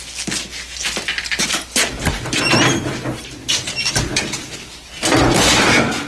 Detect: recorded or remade recorded